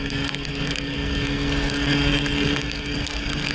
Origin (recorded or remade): remade